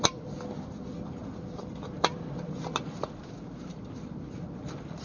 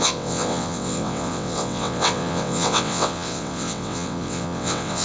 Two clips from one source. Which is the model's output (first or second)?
second